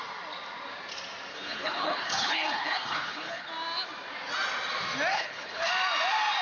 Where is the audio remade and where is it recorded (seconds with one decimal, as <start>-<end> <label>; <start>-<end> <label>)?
0.0-1.3 recorded; 1.3-3.5 remade; 3.5-5.1 recorded; 5.1-5.7 remade; 5.7-6.4 recorded